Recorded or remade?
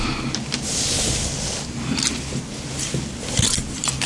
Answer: recorded